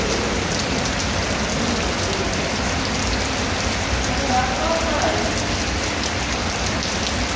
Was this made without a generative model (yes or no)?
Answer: yes